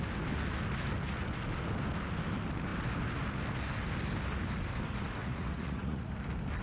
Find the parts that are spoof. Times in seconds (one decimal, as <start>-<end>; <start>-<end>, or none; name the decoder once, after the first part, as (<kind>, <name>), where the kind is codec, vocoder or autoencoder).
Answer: 5.2-6.1 (vocoder, Vocos)